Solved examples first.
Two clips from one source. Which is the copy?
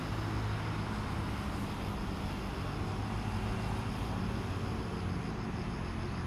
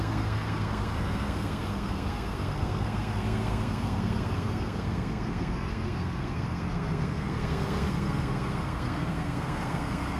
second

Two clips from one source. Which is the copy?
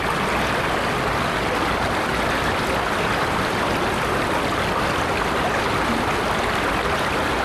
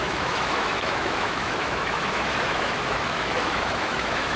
second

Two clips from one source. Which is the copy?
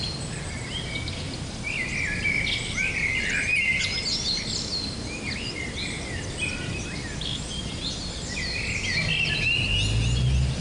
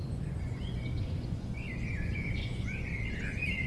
second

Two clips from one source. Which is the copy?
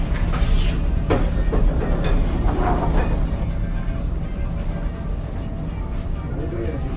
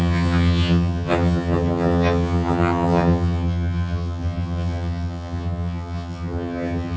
second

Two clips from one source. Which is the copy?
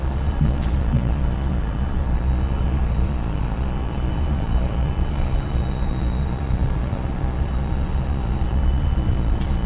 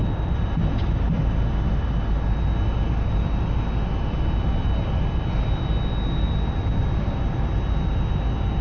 first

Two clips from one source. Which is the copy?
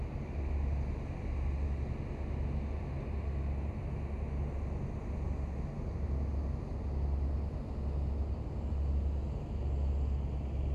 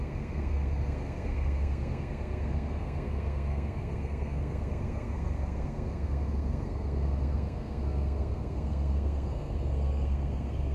second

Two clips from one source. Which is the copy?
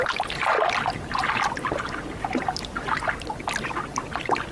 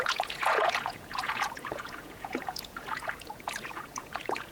second